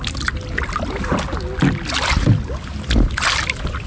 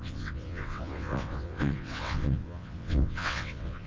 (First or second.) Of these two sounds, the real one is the first